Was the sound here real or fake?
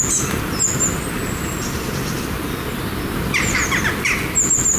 real